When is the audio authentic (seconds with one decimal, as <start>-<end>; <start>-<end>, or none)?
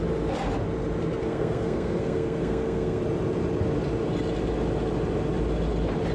0.0-1.2; 3.0-6.1